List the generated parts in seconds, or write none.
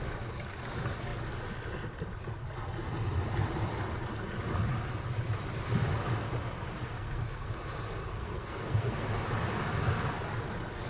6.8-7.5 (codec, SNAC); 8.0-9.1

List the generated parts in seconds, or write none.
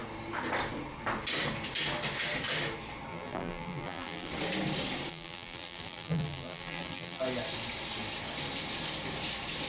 3.1-4.3 (vocoder, BigVGAN v2); 5.1-7.2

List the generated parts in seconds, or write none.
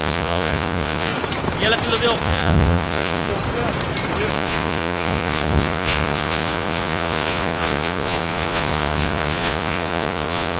0.0-1.1 (vocoder, Vocos); 2.2-3.3; 4.3-10.6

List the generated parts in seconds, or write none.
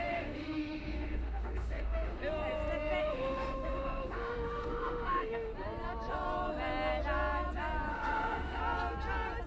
0.0-2.2 (autoencoder, DAC-VAE); 3.0-5.5; 7.9-8.6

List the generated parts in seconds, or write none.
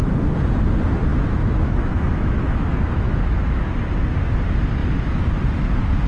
1.1-3.7 (autoencoder, DAC-VAE)